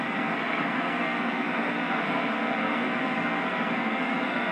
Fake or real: fake